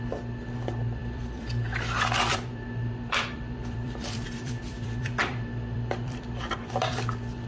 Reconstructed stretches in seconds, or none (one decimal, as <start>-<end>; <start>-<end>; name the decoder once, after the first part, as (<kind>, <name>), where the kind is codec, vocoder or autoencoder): 0.0-7.5 (vocoder, BigVGAN v2)